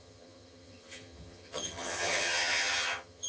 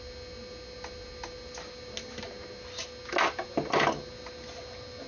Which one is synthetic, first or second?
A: first